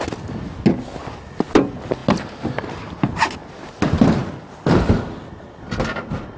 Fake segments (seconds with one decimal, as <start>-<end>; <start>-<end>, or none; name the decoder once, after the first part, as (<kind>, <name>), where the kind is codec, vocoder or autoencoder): none